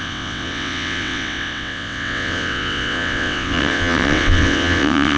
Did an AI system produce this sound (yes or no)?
yes